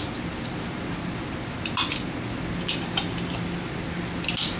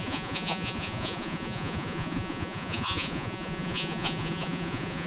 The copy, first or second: second